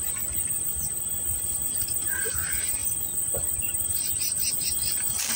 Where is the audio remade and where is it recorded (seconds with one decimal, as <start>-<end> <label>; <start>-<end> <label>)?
0.0-5.4 recorded